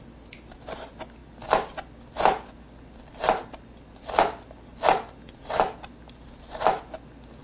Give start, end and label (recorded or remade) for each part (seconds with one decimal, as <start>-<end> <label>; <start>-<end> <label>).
0.0-7.4 recorded